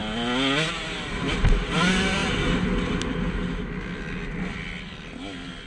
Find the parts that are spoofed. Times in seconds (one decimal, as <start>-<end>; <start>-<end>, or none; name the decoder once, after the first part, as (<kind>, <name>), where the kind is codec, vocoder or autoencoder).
1.1-2.2 (vocoder, BigVGAN v2)